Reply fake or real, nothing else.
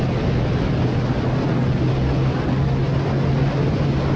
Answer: real